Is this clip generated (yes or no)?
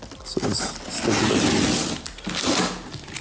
no